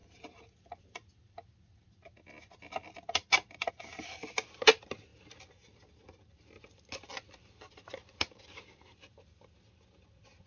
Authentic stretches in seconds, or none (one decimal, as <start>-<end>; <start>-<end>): 0.0-10.5